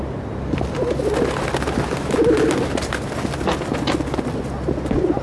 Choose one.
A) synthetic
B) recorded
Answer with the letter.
B